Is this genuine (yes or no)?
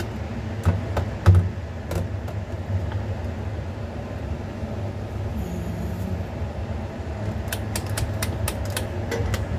yes